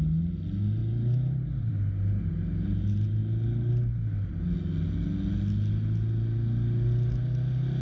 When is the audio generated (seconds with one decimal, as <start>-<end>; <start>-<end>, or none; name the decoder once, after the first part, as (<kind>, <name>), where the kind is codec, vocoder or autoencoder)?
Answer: 0.8-1.7 (vocoder, BigVGAN v2)